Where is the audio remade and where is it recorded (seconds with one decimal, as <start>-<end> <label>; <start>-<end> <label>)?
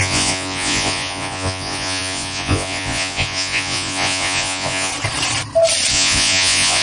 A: 0.0-4.9 remade; 4.9-5.9 recorded; 5.9-6.8 remade